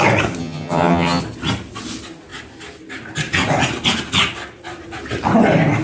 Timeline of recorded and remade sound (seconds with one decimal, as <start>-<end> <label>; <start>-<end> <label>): 0.0-0.4 recorded; 0.4-1.2 remade; 1.2-5.8 recorded